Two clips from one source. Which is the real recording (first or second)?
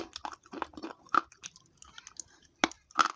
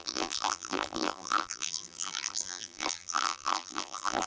first